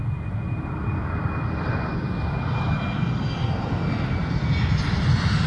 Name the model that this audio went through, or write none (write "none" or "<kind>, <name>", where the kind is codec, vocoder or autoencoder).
none